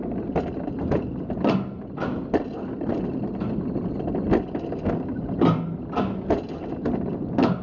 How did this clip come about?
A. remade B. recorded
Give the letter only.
B